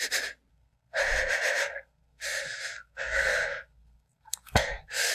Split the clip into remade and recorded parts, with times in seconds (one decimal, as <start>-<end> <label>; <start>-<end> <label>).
0.0-0.5 recorded; 0.5-1.0 remade; 1.0-1.6 recorded; 1.6-5.1 remade